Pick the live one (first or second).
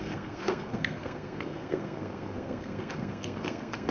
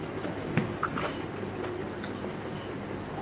second